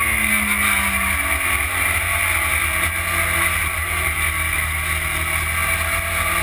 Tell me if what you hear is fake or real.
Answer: real